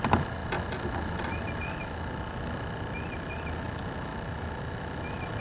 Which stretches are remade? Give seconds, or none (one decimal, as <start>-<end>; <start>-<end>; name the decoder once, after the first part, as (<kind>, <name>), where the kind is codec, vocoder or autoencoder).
none